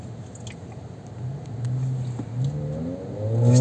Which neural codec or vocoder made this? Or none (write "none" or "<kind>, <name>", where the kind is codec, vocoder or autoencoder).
none